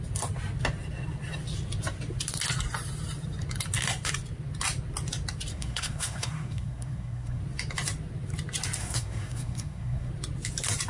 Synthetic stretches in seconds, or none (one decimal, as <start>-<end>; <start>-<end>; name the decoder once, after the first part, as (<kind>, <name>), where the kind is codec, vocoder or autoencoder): 5.5-7.4 (codec, SNAC); 8.8-10.1